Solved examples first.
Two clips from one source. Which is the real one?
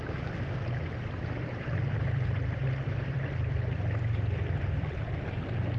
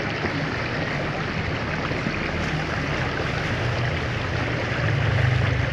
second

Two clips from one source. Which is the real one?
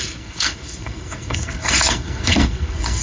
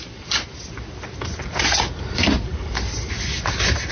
second